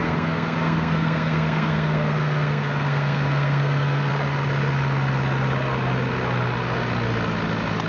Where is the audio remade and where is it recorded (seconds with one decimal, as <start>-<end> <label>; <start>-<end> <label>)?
0.0-4.1 remade; 4.1-7.9 recorded